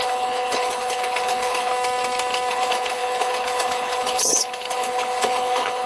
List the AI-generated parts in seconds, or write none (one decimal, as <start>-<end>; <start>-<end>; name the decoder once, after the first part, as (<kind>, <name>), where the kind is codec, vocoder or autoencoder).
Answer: 0.0-1.7 (codec, HILCodec); 2.5-5.9